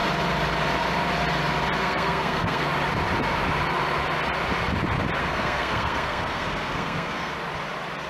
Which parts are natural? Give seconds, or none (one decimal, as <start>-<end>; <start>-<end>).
0.0-1.8; 2.7-5.2; 7.3-8.1